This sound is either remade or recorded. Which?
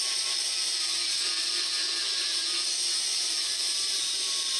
remade